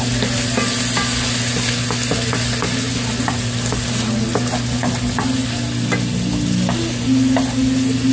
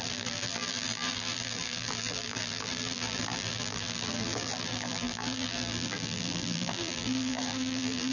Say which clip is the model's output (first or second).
second